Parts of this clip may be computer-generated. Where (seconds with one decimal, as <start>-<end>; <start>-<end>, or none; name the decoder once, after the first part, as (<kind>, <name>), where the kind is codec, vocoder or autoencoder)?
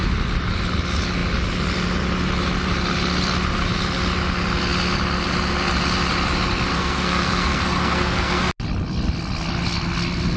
6.7-8.4 (codec, SNAC)